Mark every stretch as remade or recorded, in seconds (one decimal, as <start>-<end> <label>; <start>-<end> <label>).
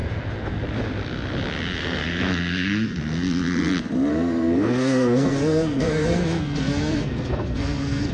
0.0-1.8 recorded; 1.8-3.0 remade; 3.0-4.1 recorded; 4.1-8.1 remade